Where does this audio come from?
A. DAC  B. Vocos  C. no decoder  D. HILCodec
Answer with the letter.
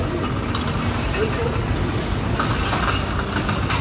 C